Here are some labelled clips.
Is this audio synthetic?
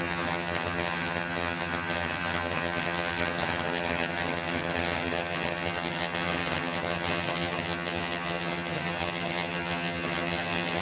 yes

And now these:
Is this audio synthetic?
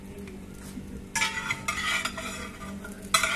no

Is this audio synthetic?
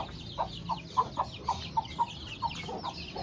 yes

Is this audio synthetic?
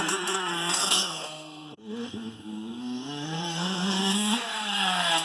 yes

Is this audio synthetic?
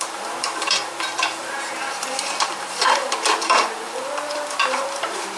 yes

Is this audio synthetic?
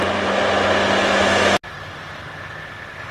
no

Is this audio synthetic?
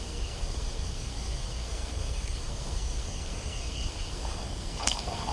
yes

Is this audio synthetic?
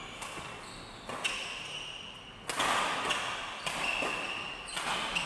no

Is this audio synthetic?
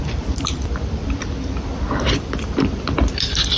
yes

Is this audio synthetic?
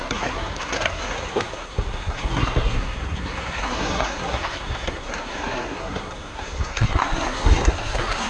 yes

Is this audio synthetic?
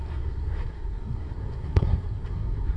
yes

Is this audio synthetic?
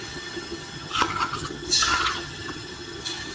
yes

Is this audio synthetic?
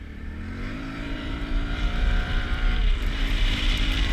yes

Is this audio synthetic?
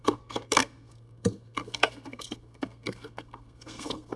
yes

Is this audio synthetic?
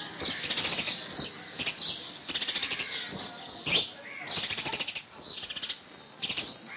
no